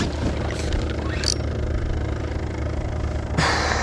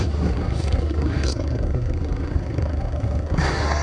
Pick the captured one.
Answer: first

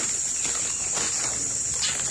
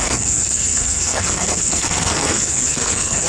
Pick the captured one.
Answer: first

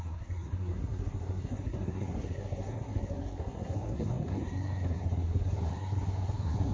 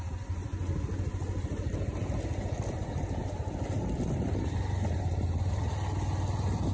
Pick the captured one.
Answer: second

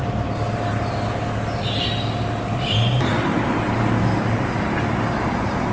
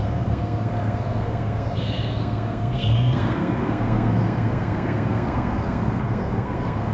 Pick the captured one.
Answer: first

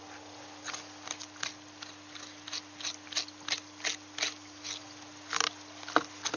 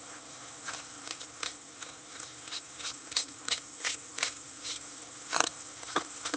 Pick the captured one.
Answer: first